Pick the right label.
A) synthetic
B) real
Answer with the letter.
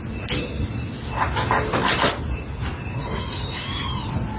B